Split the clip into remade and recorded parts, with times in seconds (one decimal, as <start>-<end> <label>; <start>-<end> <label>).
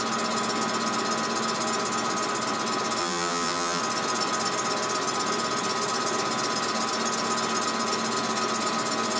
0.0-3.0 recorded; 3.0-3.8 remade; 3.8-9.2 recorded